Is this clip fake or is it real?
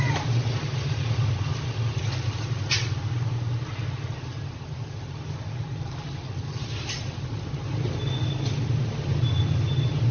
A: real